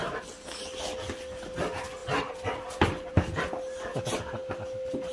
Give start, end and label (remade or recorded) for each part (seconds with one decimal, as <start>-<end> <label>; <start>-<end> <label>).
0.0-5.1 recorded